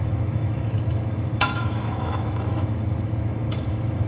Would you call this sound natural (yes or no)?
no